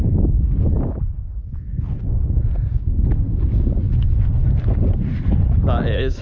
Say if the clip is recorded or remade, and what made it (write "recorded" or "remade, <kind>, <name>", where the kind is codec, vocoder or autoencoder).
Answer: recorded